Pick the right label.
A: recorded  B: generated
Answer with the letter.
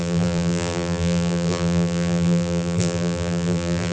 B